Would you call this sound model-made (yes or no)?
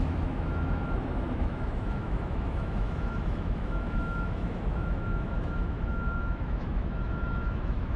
yes